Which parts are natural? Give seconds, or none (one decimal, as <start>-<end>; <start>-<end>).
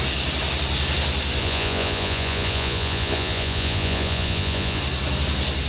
0.0-1.4; 4.8-5.7